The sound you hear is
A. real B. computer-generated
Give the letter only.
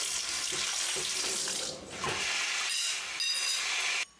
A